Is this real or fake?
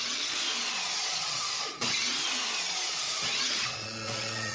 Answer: fake